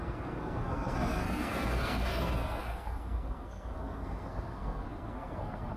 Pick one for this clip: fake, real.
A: fake